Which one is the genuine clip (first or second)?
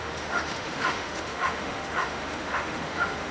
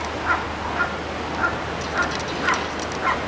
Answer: second